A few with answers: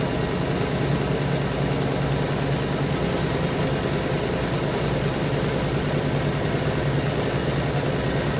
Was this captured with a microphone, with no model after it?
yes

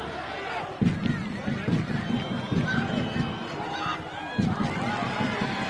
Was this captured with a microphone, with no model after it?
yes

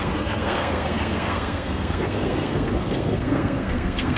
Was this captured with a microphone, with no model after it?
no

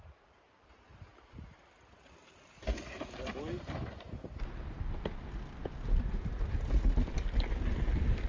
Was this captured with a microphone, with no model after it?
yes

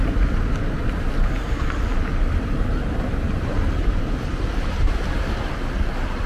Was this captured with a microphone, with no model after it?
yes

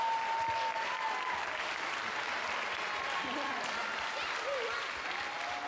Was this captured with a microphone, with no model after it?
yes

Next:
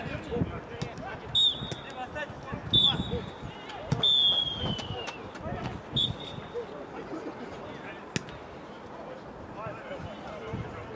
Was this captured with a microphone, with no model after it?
yes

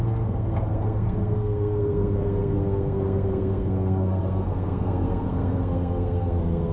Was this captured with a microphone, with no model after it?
no